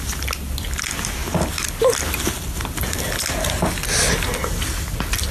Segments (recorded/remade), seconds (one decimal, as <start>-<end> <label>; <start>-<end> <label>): 0.0-5.3 recorded